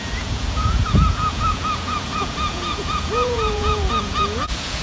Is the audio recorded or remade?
remade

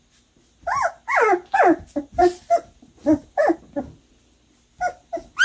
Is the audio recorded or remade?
recorded